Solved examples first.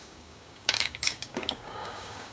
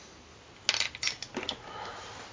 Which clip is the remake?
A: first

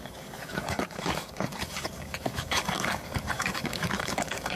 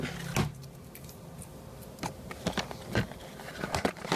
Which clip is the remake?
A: first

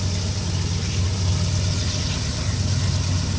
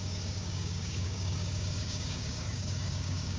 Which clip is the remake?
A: second